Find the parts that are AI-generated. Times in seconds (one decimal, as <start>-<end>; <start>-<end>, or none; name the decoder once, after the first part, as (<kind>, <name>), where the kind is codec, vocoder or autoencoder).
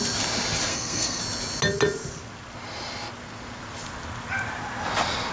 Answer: 0.7-1.2 (codec, SNAC)